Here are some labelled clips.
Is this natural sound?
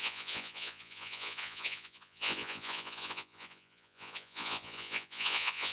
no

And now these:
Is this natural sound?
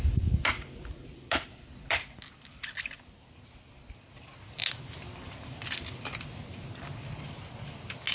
yes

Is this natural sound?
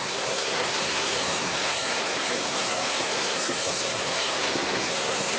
no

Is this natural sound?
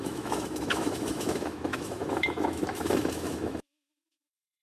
no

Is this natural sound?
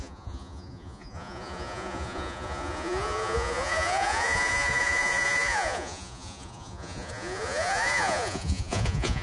no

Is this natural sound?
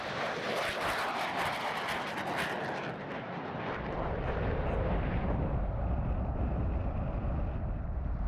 yes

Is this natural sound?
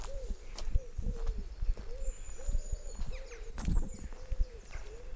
no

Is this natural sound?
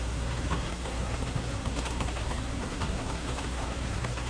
no